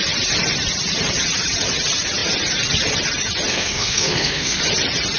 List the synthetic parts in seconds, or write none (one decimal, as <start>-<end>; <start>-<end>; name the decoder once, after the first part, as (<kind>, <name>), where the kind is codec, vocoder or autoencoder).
3.5-4.6 (codec, SNAC)